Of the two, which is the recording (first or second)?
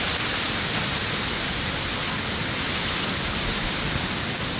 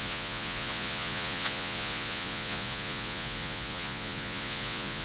first